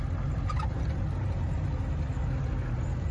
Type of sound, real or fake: real